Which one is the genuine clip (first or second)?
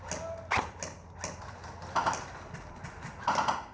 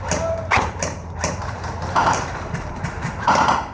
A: first